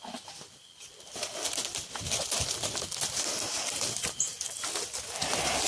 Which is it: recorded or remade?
recorded